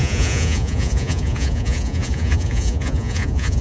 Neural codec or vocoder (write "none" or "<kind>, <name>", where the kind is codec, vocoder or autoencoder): vocoder, Vocos